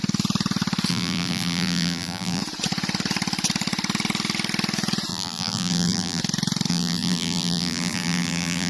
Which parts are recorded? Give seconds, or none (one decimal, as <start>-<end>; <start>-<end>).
0.0-0.9; 2.4-5.1; 6.2-6.7